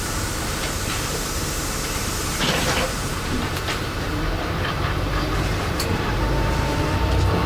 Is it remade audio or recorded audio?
remade